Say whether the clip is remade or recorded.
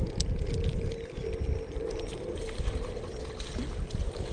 recorded